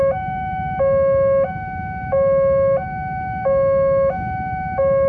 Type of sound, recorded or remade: recorded